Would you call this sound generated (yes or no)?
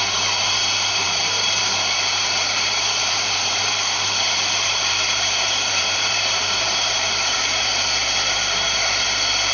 yes